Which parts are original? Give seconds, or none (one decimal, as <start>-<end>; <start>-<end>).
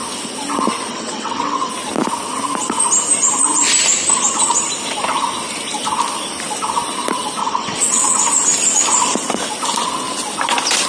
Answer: 0.0-0.9; 1.7-7.4; 8.2-10.9